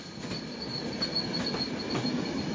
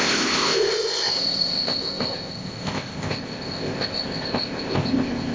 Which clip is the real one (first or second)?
first